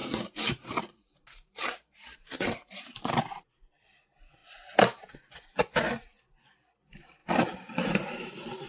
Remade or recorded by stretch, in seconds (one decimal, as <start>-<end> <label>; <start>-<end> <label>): 0.0-2.9 remade; 2.9-8.7 recorded